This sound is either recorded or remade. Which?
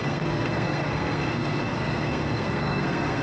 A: remade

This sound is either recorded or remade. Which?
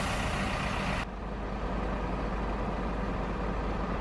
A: recorded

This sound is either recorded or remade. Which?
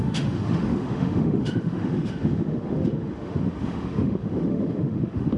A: remade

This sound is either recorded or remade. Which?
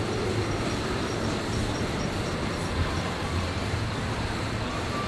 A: recorded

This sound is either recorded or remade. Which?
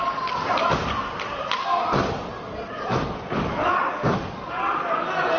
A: recorded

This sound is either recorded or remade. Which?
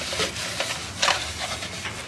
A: recorded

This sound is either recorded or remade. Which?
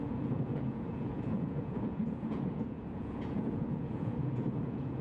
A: remade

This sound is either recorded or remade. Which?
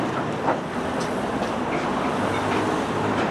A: remade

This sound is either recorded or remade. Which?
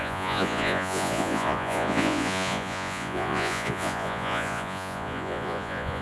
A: remade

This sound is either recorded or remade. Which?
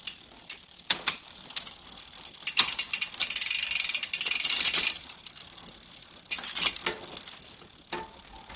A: recorded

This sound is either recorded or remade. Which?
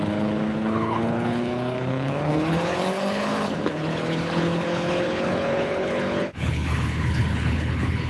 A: remade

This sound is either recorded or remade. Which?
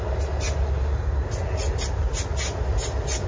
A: recorded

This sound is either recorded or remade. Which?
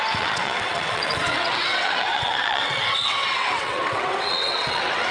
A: remade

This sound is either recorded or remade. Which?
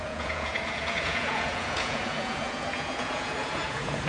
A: remade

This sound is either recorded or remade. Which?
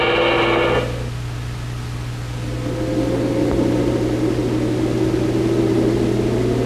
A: recorded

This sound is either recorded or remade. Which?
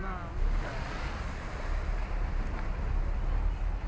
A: recorded